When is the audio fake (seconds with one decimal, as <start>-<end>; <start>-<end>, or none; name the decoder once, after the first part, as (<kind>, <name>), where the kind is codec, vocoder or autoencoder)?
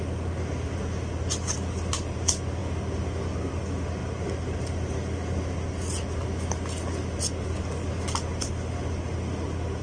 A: none